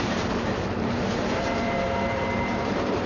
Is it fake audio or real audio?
fake